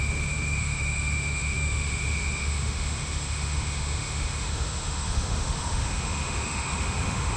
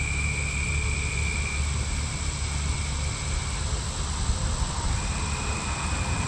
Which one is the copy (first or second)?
first